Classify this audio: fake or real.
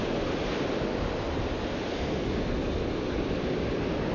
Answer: real